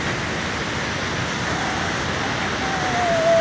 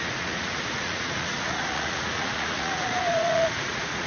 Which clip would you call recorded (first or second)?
first